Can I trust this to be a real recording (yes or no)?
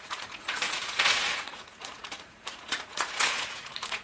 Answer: no